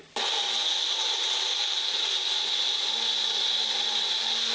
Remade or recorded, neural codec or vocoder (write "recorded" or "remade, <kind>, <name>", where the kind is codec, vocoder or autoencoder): recorded